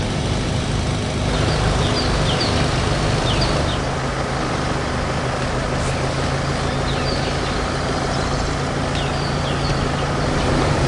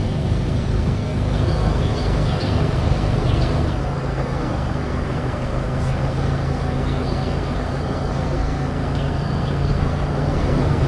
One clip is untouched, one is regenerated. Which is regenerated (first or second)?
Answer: second